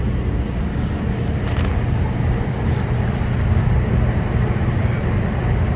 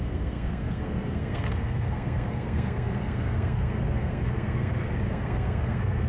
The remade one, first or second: second